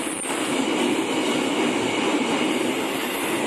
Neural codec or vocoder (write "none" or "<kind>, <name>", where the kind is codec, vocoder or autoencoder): none